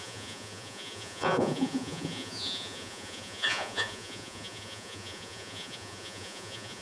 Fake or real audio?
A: fake